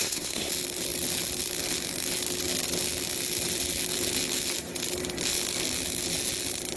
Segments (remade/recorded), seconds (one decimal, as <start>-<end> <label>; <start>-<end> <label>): 0.0-0.5 remade; 0.5-6.8 recorded